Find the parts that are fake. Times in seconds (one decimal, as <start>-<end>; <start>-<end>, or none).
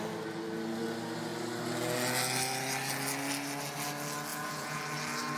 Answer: 4.3-4.8